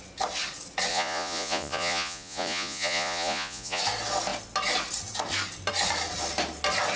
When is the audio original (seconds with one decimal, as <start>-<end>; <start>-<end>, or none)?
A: 0.0-0.9; 3.8-7.0